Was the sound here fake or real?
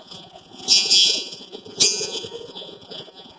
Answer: fake